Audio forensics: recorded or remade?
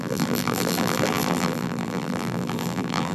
remade